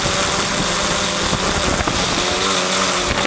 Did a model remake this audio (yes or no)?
no